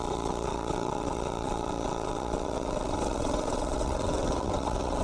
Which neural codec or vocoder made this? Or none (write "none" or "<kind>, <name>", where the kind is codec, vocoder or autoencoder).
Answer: vocoder, WaveNeXt